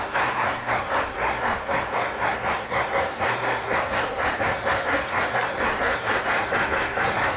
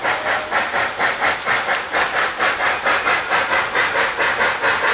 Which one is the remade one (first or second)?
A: first